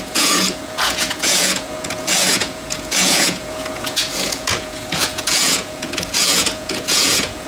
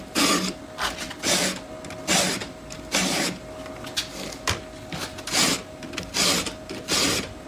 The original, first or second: second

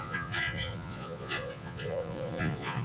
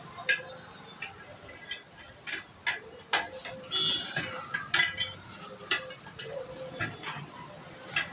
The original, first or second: second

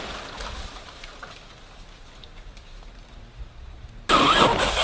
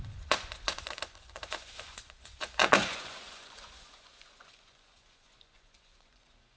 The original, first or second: first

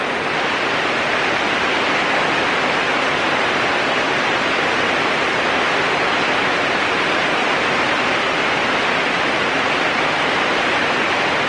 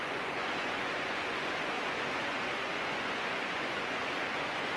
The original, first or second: first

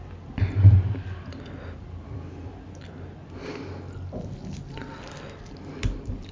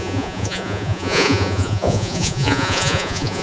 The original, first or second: first